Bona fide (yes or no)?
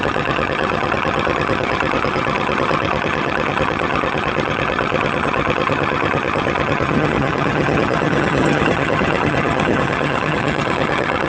no